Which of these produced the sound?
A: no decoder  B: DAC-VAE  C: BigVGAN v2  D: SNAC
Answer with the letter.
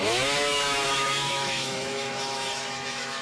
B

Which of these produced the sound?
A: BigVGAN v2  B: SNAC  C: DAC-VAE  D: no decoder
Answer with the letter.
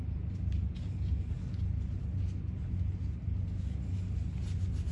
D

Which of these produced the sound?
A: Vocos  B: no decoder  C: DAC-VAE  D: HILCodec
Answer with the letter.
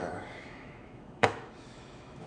C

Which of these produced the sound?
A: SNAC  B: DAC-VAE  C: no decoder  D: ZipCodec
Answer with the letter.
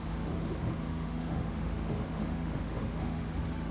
B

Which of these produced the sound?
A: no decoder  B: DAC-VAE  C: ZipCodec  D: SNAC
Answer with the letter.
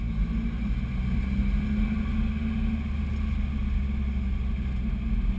A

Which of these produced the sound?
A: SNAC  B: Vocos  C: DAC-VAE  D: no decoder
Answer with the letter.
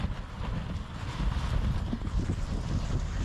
D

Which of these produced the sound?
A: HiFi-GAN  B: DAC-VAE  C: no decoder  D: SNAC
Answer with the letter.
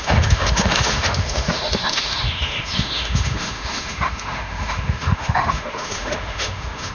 B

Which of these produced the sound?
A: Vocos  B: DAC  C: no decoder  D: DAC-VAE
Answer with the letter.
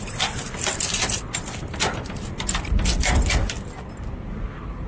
C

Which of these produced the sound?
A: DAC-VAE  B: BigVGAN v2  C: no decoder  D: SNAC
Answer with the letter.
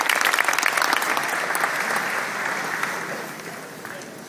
C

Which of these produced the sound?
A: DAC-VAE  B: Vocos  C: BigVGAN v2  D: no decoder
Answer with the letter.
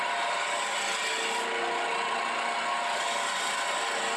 D